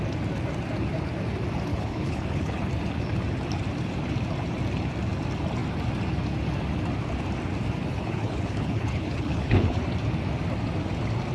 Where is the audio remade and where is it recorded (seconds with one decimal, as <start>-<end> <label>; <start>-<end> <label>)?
0.0-1.7 recorded; 1.7-2.6 remade; 2.6-7.9 recorded; 7.9-9.8 remade; 9.8-11.3 recorded

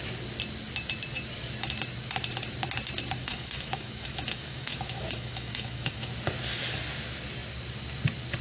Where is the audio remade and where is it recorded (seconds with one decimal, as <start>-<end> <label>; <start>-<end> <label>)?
0.0-3.2 recorded; 3.2-6.1 remade; 6.1-8.4 recorded

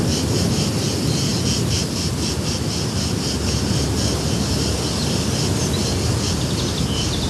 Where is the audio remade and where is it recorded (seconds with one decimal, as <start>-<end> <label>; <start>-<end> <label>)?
0.0-7.3 recorded

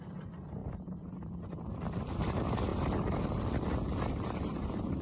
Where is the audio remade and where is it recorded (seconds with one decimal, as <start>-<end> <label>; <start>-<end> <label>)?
0.0-0.6 remade; 0.6-1.6 recorded; 1.6-2.7 remade; 2.7-4.0 recorded; 4.0-5.0 remade

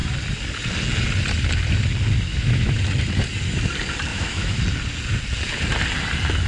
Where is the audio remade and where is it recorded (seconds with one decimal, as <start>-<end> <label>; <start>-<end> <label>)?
0.0-2.3 recorded; 2.3-2.8 remade; 2.8-4.1 recorded; 4.1-4.6 remade; 4.6-6.5 recorded

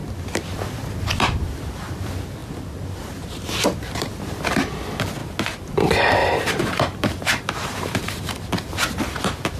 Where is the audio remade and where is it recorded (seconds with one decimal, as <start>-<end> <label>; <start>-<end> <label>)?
0.0-6.2 recorded; 6.2-8.3 remade; 8.3-9.6 recorded

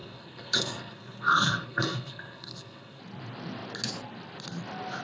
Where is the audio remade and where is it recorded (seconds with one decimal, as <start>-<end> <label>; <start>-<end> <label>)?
0.0-3.0 remade; 3.0-5.0 recorded